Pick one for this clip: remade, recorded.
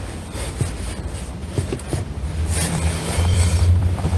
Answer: remade